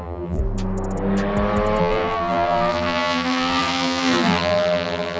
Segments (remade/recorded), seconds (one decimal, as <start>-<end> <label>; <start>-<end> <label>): 0.0-0.4 remade; 0.4-1.8 recorded; 1.8-5.2 remade